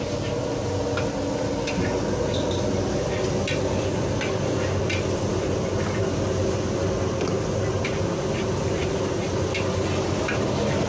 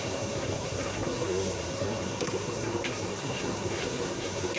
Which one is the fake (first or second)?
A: second